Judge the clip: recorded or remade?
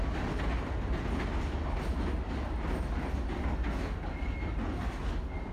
recorded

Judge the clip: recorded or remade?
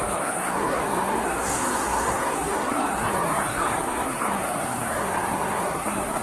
remade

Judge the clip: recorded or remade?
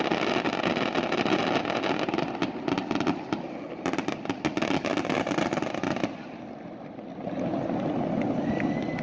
recorded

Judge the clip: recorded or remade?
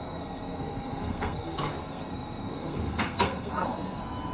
remade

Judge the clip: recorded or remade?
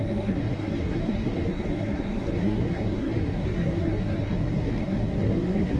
remade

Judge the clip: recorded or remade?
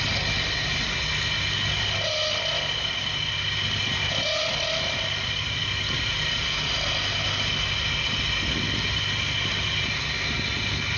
recorded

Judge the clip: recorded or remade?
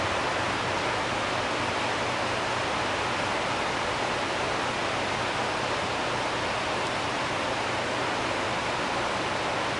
recorded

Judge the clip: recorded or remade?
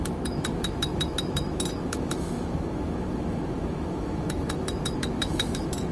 remade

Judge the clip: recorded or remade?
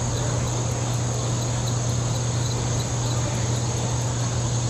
recorded